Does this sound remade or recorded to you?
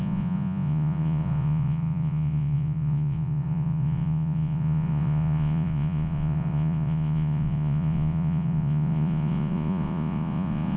remade